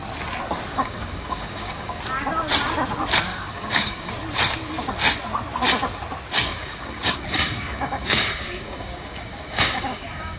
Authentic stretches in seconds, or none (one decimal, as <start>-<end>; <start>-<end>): 0.0-0.7; 2.0-3.3; 4.1-6.5